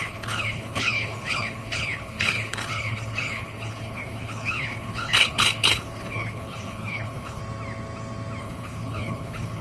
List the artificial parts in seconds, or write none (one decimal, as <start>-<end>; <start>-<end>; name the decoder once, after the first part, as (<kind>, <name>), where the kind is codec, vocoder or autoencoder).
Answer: 0.0-7.4 (codec, HILCodec); 8.4-9.6